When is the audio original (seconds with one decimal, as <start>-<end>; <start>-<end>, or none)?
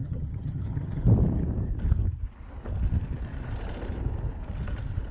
1.0-5.1